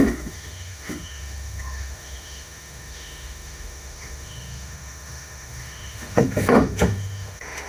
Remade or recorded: remade